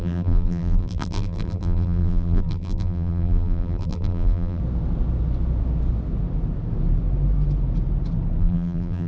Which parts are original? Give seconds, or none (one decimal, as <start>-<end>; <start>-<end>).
4.6-8.4